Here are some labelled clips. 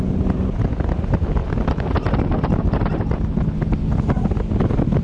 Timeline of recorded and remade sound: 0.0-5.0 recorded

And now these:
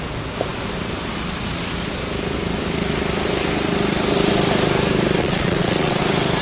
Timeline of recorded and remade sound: 0.0-5.2 recorded; 5.2-6.0 remade; 6.0-6.4 recorded

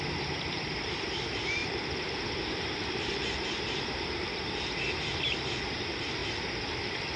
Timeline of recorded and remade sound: 0.0-6.2 remade; 6.2-6.7 recorded; 6.7-7.2 remade

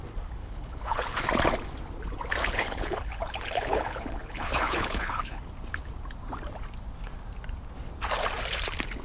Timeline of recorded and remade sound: 0.0-0.4 recorded; 0.4-1.2 remade; 1.2-2.4 recorded; 2.4-5.4 remade; 5.4-9.0 recorded